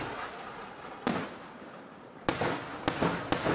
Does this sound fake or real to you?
real